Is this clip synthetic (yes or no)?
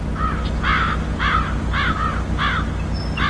no